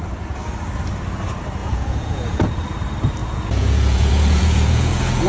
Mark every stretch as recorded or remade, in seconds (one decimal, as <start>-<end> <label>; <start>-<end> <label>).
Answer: 0.0-1.6 recorded; 1.6-2.5 remade; 2.5-3.2 recorded; 3.2-5.3 remade